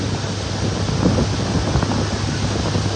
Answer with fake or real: real